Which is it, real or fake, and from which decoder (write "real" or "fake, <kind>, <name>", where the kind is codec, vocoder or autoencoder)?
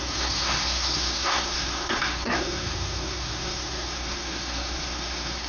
fake, codec, SNAC